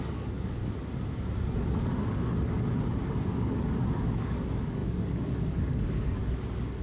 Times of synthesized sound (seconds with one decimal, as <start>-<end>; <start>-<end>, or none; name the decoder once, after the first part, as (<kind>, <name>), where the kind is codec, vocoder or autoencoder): 0.0-0.6 (codec, DAC); 3.3-6.2